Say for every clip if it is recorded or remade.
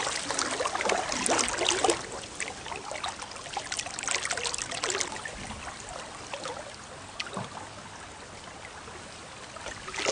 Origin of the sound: recorded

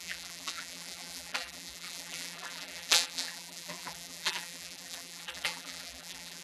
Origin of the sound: remade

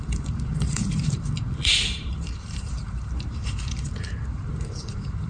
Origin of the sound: remade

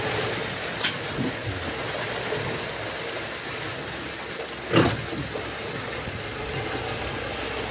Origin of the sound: remade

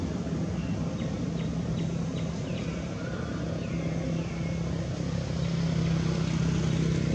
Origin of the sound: recorded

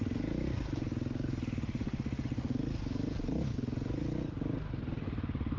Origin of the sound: recorded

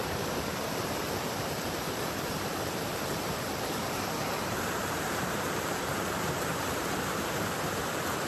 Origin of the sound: remade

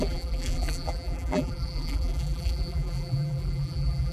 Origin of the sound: remade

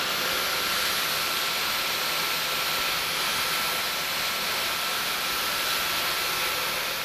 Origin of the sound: recorded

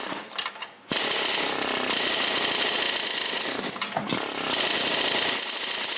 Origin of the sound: recorded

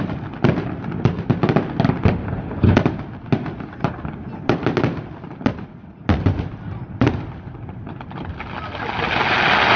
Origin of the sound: recorded